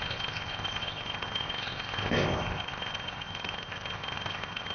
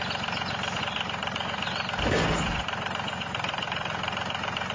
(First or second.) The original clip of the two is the second